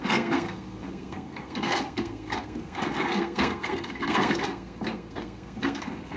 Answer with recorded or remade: remade